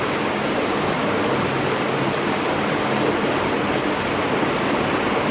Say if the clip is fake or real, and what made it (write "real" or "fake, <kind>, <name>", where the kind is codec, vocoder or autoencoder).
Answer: real